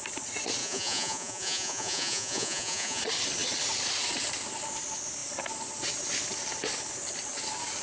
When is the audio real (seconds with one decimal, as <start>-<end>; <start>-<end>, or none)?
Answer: 0.0-0.6; 3.0-7.8